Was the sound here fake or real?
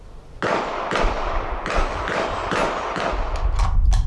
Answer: real